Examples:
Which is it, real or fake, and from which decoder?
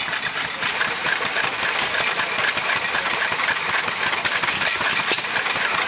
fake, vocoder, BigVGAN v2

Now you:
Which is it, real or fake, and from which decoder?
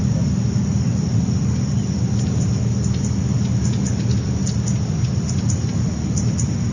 real